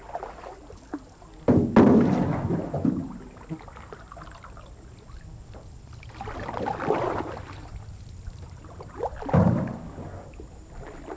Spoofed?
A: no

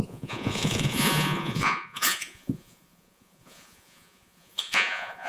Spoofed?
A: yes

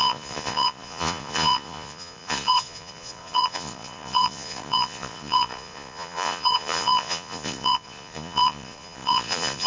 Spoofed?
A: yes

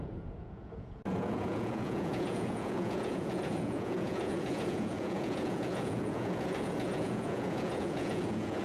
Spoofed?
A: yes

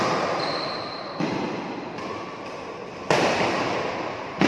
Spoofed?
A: no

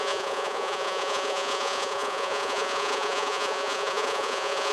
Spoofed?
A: yes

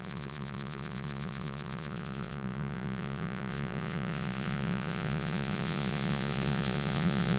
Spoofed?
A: yes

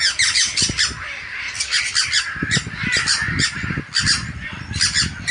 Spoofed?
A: no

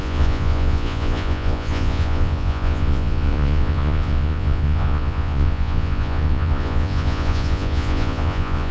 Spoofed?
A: yes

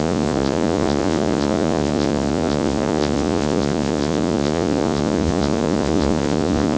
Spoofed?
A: yes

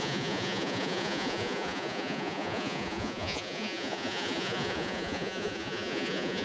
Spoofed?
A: yes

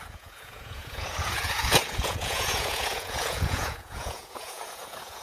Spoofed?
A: yes